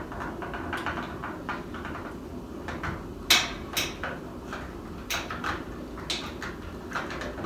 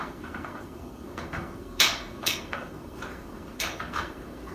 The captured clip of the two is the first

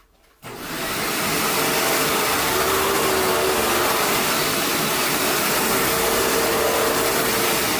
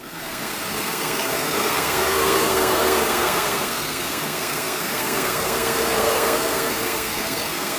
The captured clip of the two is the first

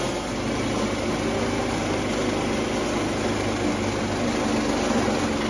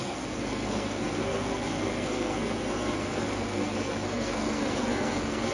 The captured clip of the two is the first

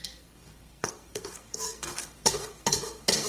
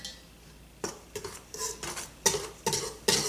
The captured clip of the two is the second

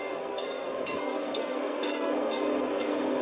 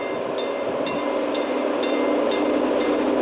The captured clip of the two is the second